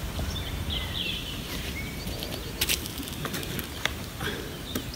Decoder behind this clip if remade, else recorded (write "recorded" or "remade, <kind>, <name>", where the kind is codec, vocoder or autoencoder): remade, vocoder, BigVGAN v2